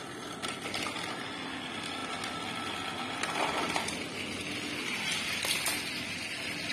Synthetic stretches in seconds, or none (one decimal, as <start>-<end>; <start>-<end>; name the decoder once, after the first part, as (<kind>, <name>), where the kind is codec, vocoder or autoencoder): none